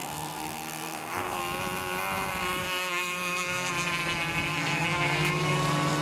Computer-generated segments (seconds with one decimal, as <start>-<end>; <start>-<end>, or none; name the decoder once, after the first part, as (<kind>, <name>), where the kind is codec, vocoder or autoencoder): 0.0-1.4 (codec, SNAC); 2.6-3.7; 4.5-5.3

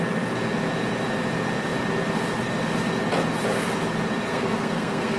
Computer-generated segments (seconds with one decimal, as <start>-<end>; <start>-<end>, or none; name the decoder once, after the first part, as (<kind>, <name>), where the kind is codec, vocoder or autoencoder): 4.3-5.2 (codec, SNAC)

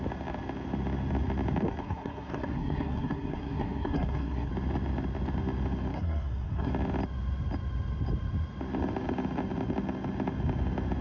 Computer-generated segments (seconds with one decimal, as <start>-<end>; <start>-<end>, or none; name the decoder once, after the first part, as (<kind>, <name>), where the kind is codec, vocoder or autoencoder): 1.8-4.5 (codec, SNAC); 5.9-6.7

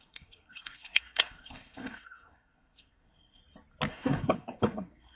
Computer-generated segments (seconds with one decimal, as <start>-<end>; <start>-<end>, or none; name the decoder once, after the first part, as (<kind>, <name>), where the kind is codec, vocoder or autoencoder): 0.0-3.4 (codec, SNAC); 3.9-5.2

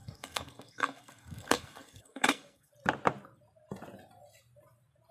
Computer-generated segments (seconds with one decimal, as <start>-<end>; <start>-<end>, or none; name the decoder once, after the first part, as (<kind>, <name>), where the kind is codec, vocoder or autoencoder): 0.0-2.7 (codec, SNAC)

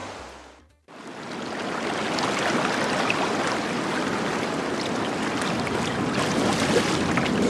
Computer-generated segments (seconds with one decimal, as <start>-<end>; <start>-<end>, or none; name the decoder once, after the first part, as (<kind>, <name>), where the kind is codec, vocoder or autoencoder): none

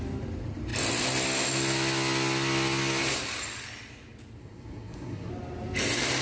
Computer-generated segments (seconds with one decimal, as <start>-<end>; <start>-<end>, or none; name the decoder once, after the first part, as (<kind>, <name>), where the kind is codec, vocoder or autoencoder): 4.4-5.3 (codec, SNAC)

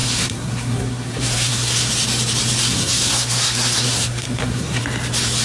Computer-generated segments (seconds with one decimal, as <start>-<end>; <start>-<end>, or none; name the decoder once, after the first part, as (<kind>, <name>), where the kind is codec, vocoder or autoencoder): 0.0-1.9 (codec, SNAC); 2.6-4.8